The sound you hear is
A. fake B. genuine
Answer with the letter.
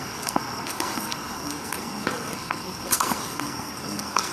A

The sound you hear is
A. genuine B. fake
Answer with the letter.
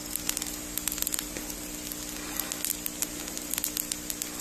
A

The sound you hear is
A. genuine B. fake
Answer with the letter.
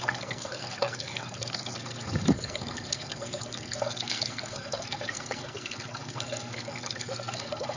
B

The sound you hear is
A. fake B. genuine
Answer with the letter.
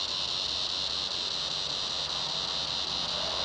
B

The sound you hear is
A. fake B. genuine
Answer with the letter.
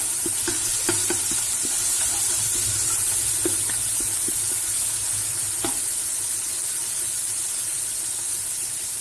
B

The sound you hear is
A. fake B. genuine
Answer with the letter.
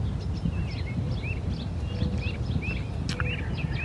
B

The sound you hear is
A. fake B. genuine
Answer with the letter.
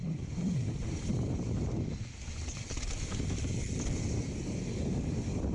B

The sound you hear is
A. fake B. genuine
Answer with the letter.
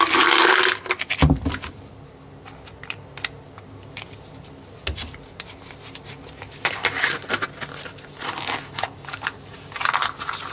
B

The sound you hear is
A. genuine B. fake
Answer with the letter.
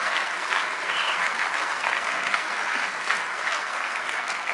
B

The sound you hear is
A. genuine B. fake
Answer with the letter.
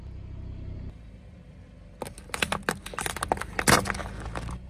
A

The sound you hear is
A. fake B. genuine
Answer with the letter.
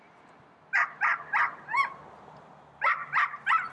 B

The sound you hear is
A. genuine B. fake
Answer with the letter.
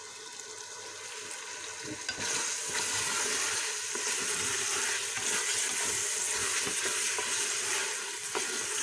A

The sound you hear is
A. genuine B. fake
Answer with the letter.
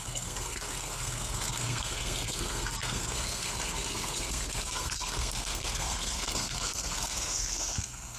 B